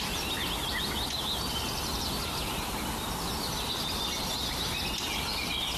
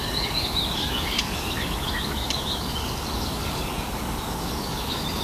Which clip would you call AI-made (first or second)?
second